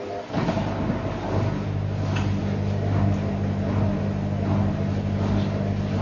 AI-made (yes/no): no